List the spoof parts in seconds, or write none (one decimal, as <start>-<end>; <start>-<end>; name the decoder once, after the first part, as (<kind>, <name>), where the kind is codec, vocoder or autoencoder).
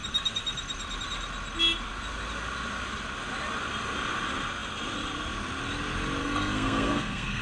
6.2-7.4 (codec, SNAC)